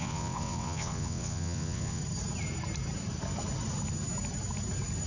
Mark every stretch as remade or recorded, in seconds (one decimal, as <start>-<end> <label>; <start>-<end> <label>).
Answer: 0.0-2.0 remade; 2.0-5.1 recorded